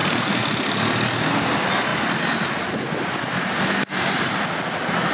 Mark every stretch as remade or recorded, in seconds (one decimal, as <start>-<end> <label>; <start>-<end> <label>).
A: 0.0-5.1 recorded